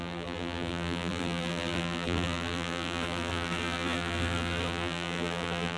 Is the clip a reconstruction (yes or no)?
yes